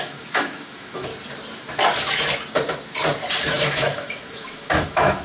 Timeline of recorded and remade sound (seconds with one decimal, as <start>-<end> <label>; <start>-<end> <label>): 0.0-1.1 remade; 1.1-3.5 recorded; 3.5-5.2 remade